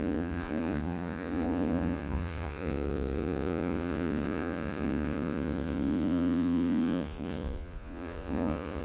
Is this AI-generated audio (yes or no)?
yes